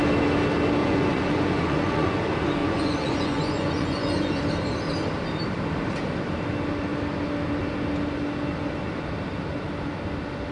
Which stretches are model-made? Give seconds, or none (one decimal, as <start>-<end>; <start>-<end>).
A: 0.8-2.2; 2.6-4.4

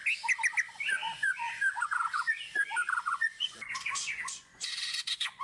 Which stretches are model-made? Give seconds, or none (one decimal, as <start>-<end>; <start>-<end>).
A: 0.7-5.4